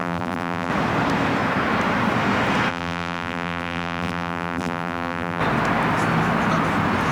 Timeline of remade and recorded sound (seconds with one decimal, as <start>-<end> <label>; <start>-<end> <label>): 0.0-0.7 remade; 0.7-2.7 recorded; 2.7-5.4 remade; 5.4-7.1 recorded